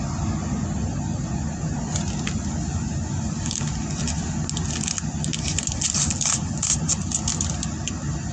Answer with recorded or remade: recorded